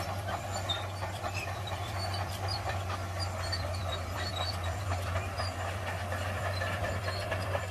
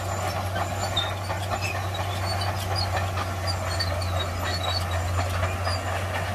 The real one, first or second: second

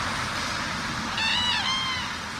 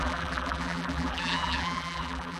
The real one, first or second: first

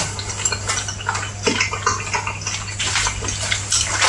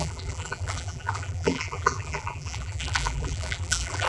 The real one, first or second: first